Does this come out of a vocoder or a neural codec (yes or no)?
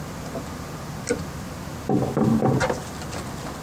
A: no